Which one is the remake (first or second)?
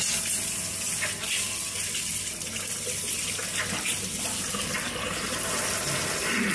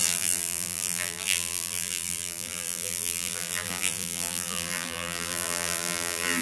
second